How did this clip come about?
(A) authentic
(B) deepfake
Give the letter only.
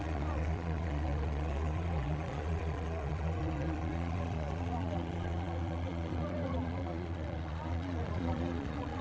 B